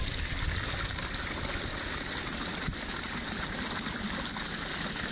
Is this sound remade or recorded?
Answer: recorded